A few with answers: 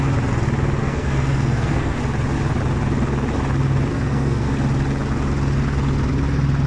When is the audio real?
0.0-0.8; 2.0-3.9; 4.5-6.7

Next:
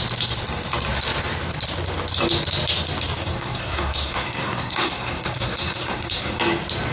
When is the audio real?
0.0-3.2; 6.4-6.9

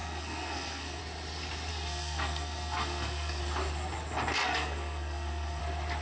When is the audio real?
1.0-1.7; 3.4-4.4; 5.6-6.0

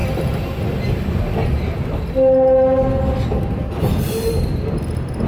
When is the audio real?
0.0-5.3

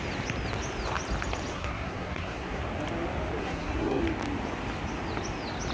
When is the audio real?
0.0-1.5; 2.6-3.4; 4.0-5.7